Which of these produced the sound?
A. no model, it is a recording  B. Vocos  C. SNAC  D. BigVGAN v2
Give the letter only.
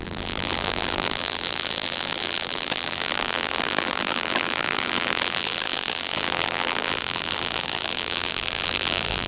D